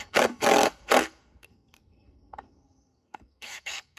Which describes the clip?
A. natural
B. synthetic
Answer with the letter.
B